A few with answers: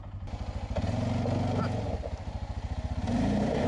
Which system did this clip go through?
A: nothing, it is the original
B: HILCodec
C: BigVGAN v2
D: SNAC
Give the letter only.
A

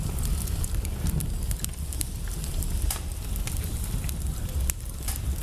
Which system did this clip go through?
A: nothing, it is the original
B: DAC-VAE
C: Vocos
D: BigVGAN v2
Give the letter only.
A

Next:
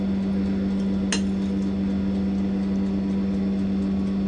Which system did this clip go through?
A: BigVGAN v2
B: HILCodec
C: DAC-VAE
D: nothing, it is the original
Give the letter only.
D